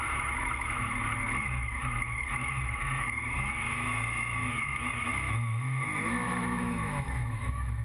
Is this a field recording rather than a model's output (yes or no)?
no